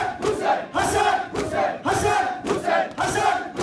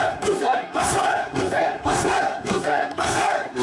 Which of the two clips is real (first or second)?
first